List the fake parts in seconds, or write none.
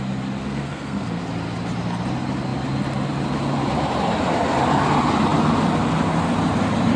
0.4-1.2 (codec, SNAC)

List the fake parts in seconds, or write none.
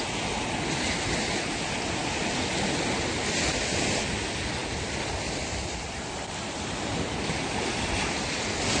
none